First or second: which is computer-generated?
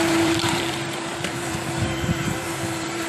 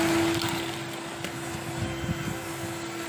first